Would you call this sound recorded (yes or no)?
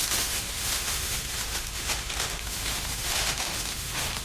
no